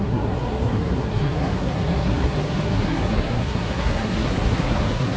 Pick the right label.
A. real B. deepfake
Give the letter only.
B